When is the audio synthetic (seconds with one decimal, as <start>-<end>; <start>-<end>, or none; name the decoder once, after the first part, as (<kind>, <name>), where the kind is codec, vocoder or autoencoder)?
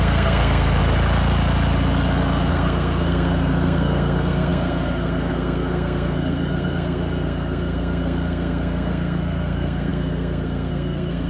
0.0-0.8 (codec, SNAC); 2.5-11.3